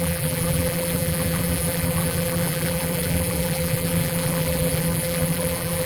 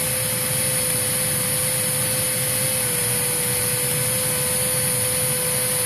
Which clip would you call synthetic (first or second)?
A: first